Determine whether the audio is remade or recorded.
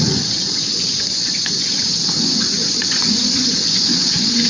remade